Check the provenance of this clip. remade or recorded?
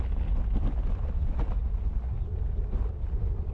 recorded